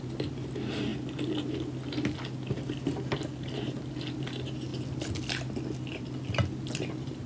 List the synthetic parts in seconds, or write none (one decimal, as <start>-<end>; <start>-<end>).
none